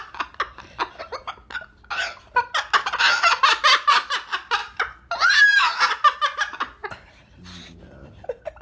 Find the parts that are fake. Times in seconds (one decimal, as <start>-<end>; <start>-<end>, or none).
none